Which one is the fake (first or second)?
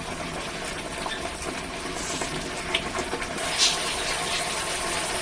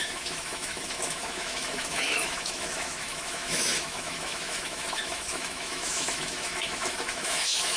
second